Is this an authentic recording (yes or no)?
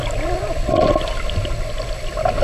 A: yes